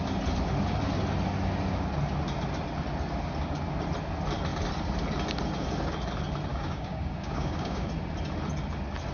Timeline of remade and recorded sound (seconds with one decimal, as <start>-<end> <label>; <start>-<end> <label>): 0.0-6.5 recorded; 6.5-7.9 remade; 7.9-9.1 recorded